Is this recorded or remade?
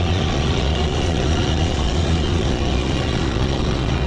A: remade